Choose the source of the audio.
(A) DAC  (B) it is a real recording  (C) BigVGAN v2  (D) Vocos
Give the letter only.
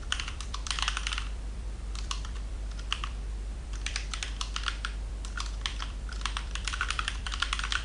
C